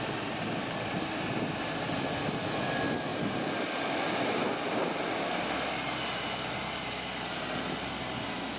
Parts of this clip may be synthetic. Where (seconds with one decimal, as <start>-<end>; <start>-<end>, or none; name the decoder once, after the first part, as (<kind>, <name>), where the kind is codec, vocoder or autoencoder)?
none